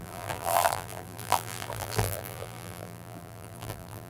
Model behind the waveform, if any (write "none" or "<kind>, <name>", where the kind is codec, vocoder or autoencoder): vocoder, BigVGAN v2